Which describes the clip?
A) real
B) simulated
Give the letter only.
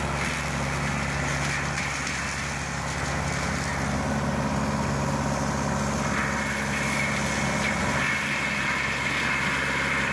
A